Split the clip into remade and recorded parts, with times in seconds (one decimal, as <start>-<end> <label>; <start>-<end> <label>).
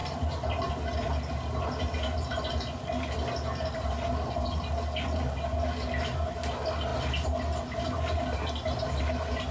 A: 0.0-0.7 remade; 0.7-9.5 recorded